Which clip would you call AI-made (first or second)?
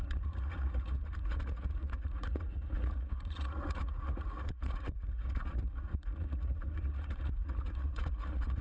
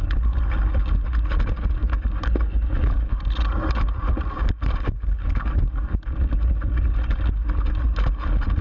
first